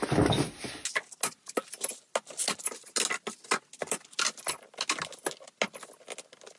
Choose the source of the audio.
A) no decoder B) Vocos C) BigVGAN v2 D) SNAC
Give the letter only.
A